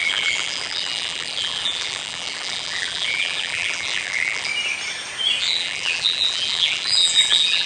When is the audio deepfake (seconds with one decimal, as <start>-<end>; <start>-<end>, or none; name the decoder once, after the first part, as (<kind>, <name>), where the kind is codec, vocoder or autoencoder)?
0.0-4.5 (vocoder, BigVGAN v2); 5.4-7.7